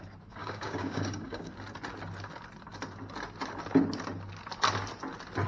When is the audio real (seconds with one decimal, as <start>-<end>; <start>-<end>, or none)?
0.0-0.4; 1.5-5.5

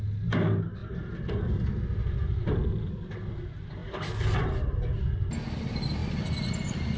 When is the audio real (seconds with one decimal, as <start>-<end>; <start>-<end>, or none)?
0.0-7.0

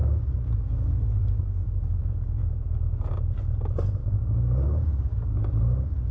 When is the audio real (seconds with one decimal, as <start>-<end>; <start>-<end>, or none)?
2.0-2.4; 3.1-4.0; 5.4-6.1

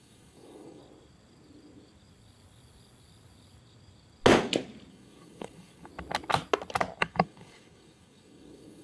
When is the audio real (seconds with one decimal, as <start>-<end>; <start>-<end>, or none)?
0.8-4.9; 5.9-7.0